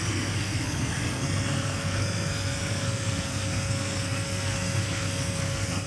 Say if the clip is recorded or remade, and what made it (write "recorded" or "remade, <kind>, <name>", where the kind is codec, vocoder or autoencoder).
remade, codec, SNAC